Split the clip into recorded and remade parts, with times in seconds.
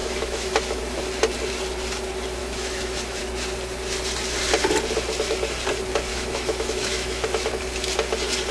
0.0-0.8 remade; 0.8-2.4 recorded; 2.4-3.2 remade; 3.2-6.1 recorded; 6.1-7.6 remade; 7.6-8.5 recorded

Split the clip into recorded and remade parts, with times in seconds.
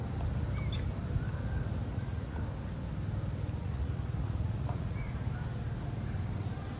0.0-1.9 recorded; 1.9-2.4 remade; 2.4-3.6 recorded; 3.6-5.3 remade; 5.3-6.8 recorded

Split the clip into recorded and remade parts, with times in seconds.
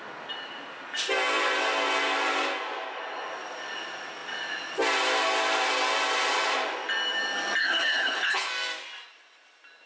0.0-7.6 recorded; 7.6-8.5 remade; 8.5-9.9 recorded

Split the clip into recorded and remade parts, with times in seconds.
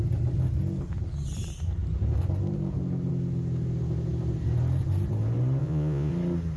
0.0-5.6 recorded; 5.6-6.1 remade; 6.1-6.6 recorded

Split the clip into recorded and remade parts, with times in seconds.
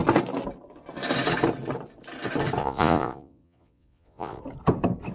0.0-2.6 recorded; 2.6-4.4 remade; 4.4-5.1 recorded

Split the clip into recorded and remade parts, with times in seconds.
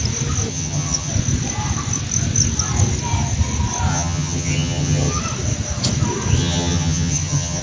0.0-0.5 recorded; 0.5-1.1 remade; 1.1-3.9 recorded; 3.9-5.2 remade; 5.2-6.4 recorded; 6.4-7.6 remade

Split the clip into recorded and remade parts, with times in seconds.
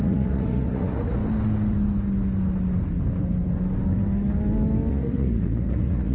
0.0-1.2 remade; 1.2-4.9 recorded; 4.9-6.1 remade